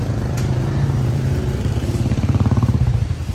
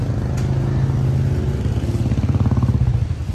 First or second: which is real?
second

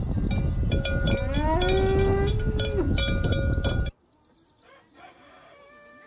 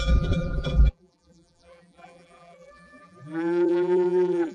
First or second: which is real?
first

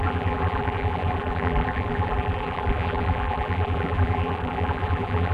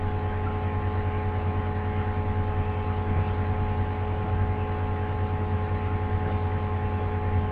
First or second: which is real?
second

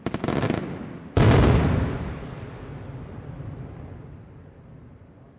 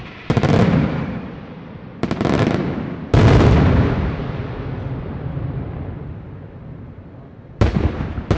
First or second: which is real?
first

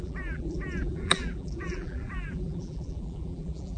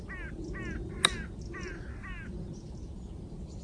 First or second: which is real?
second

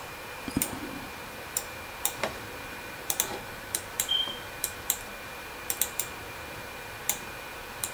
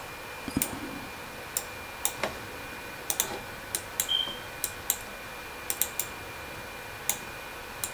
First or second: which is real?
second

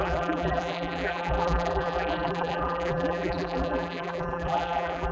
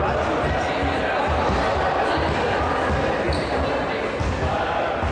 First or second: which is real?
second